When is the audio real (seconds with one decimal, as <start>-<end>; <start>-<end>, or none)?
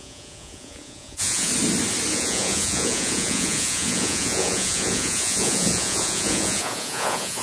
1.5-2.1